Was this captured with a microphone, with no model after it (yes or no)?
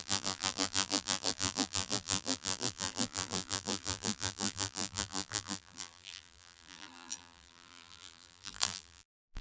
no